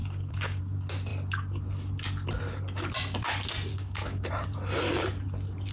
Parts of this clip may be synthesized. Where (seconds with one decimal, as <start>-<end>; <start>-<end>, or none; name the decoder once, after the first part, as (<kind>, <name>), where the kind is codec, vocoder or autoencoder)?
0.0-0.6 (codec, DAC); 3.7-4.3

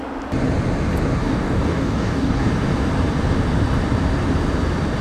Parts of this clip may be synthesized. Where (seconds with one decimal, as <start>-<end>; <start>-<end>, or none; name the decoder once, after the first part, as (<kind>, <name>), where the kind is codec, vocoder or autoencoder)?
1.2-2.5 (codec, DAC)

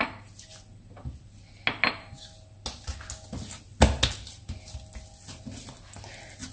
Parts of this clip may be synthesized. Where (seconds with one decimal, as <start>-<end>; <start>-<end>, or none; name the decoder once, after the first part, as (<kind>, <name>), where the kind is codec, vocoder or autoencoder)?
none

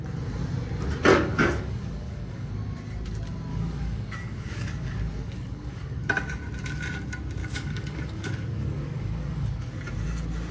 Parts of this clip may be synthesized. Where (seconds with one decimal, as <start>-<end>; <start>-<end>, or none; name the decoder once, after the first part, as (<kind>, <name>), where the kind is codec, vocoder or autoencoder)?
1.1-2.5 (codec, DAC); 3.5-6.1; 7.4-9.8

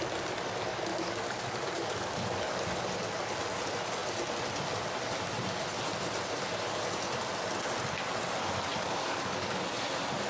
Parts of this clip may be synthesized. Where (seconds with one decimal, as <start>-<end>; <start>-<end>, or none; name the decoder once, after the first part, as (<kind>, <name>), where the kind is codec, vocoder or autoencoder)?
0.9-2.8 (codec, DAC); 8.7-9.6